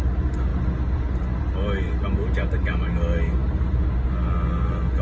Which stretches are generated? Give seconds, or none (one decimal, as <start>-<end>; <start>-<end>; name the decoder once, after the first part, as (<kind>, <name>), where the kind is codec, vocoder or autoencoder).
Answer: none